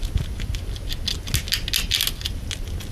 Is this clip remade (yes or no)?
no